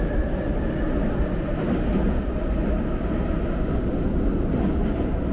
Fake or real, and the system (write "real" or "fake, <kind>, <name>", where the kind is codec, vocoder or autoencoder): real